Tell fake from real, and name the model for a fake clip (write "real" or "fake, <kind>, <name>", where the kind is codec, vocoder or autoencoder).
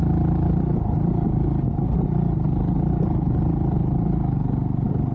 real